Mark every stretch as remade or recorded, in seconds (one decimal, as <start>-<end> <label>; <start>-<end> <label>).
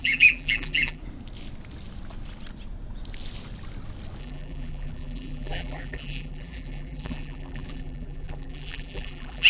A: 0.0-1.0 remade; 1.0-4.2 recorded; 4.2-9.5 remade